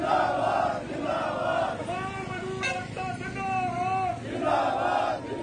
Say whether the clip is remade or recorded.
recorded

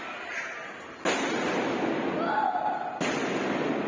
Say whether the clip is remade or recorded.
recorded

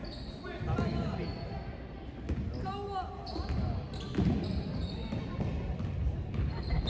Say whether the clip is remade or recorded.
recorded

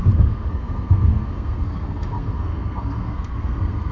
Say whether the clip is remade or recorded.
remade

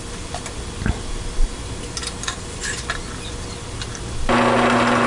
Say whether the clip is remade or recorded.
recorded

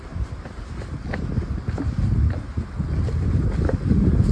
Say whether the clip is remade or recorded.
recorded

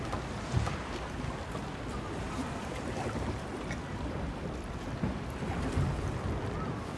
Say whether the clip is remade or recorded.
recorded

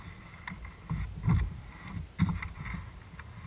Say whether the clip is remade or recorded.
recorded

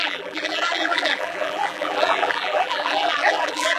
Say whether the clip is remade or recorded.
remade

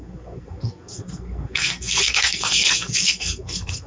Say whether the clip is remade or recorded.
remade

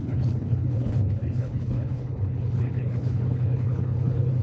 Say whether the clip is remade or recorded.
remade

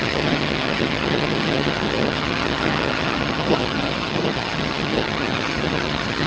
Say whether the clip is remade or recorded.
remade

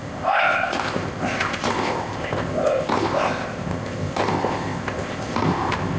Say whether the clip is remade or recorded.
remade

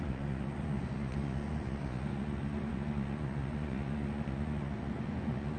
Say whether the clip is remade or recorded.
remade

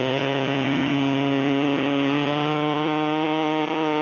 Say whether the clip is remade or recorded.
remade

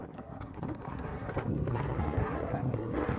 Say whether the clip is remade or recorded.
remade